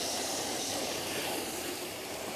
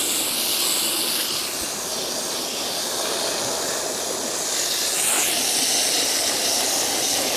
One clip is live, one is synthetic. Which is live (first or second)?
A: second